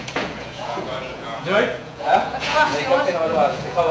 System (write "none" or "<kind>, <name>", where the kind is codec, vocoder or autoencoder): vocoder, Vocos